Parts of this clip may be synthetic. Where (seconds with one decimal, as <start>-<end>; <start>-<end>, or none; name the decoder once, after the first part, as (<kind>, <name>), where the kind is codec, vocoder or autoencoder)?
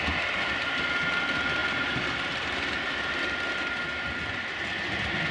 none